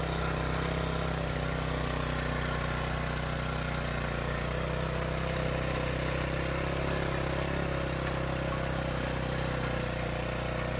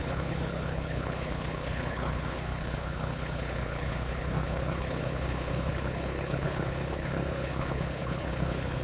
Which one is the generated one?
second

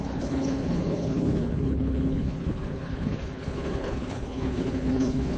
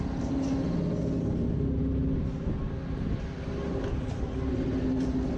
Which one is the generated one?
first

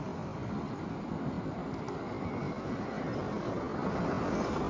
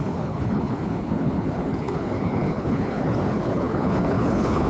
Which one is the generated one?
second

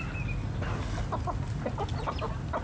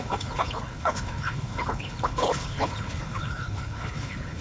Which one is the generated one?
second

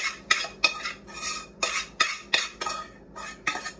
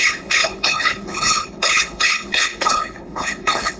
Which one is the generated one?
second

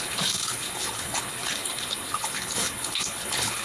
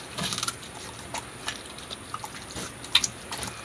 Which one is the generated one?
first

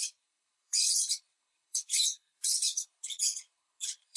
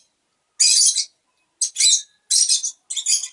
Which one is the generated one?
first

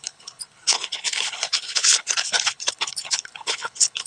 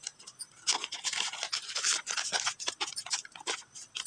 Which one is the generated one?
first